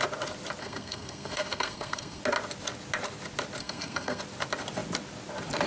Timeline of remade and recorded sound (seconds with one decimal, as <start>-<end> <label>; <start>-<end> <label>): 0.0-0.6 recorded; 0.6-2.2 remade; 2.2-3.6 recorded; 3.6-4.2 remade; 4.2-5.7 recorded

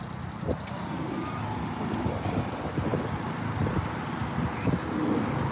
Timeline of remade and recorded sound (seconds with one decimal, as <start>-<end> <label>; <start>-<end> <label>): 0.0-5.5 recorded

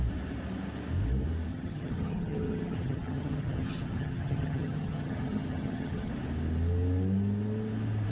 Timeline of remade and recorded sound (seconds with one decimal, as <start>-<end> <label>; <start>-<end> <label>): 0.0-1.5 recorded; 1.5-6.1 remade; 6.1-8.1 recorded

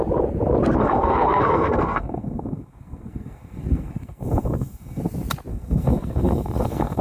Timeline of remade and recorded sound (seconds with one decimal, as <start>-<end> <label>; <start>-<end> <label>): 0.0-0.8 recorded; 0.8-5.0 remade; 5.0-5.5 recorded; 5.5-7.0 remade

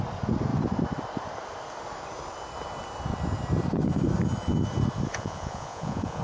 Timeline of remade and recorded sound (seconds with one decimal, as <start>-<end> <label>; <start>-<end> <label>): 0.0-5.1 recorded; 5.1-6.2 remade

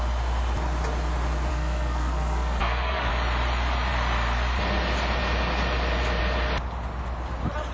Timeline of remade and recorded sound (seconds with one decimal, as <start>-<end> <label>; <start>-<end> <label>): 0.0-1.5 recorded; 1.5-3.1 remade; 3.1-7.7 recorded